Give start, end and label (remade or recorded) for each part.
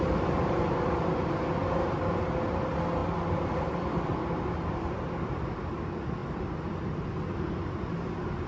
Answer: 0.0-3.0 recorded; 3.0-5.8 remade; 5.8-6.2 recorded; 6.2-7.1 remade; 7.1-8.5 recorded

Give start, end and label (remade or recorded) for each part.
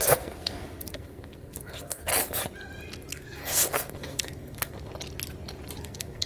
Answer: 0.0-2.1 remade; 2.1-3.1 recorded; 3.1-4.9 remade; 4.9-5.8 recorded; 5.8-6.3 remade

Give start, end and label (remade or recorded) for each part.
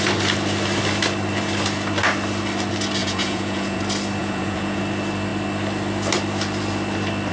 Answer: 0.0-3.0 recorded; 3.0-3.8 remade; 3.8-4.2 recorded; 4.2-4.8 remade; 4.8-7.3 recorded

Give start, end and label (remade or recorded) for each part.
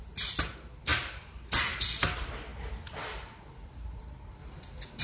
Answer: 0.0-5.0 recorded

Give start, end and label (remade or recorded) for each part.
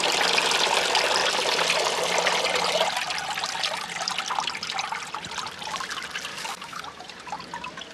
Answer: 0.0-6.3 recorded; 6.3-6.8 remade; 6.8-7.9 recorded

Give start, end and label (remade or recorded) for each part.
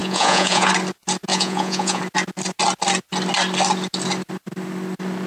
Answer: 0.0-0.7 remade; 0.7-1.3 recorded; 1.3-2.0 remade; 2.0-5.3 recorded